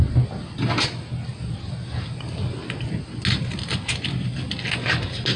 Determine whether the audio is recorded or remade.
recorded